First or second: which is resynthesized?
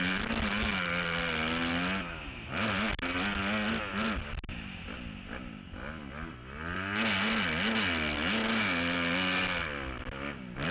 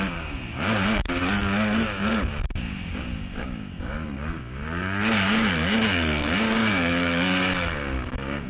second